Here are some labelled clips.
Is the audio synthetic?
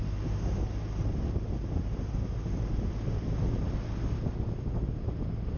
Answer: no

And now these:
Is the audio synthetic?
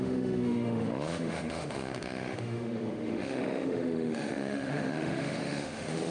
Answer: yes